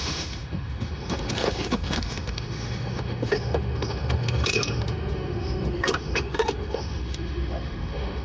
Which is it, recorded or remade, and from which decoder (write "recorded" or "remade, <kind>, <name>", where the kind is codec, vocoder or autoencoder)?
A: remade, autoencoder, DAC-VAE